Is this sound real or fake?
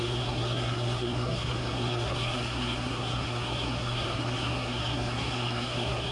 fake